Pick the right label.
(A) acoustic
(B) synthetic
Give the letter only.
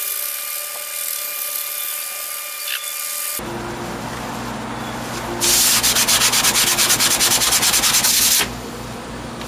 A